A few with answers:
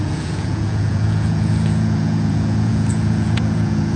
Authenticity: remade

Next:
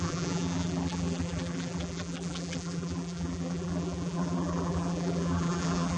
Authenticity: remade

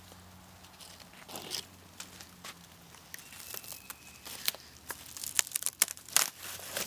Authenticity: recorded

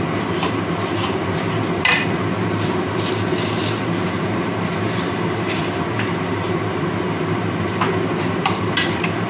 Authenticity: remade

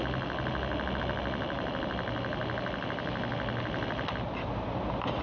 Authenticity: recorded